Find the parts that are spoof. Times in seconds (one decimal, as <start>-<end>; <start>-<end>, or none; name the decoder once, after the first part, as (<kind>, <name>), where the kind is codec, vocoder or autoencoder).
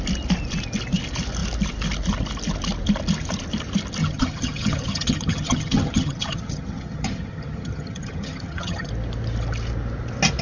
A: 4.0-8.9 (vocoder, HiFi-GAN)